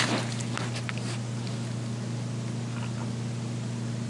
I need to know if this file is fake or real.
real